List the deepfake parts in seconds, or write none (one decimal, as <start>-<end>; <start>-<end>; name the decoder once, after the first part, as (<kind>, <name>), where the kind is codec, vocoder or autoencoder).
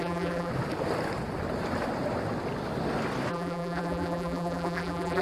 0.0-0.5 (vocoder, BigVGAN v2); 3.3-5.2